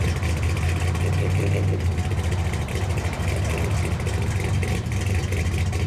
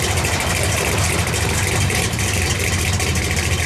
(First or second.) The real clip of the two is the first